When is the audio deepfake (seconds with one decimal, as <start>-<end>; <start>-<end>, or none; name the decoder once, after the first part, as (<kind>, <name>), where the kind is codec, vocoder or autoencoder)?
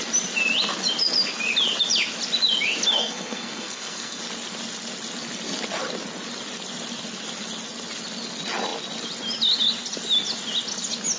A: 3.0-4.2 (codec, SNAC)